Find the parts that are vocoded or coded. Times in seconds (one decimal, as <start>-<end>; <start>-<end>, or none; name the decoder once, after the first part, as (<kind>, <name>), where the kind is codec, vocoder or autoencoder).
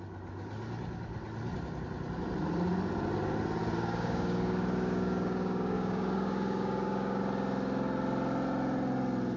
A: 3.6-7.2 (codec, DAC)